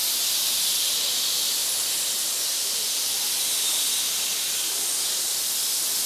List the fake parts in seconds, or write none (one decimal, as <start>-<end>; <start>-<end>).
none